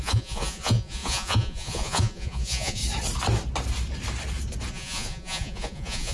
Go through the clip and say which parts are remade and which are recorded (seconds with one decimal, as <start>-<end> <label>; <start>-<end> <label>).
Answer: 0.0-2.8 remade; 2.8-4.7 recorded; 4.7-6.1 remade